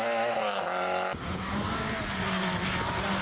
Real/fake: real